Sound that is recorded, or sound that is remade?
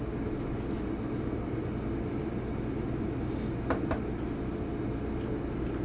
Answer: recorded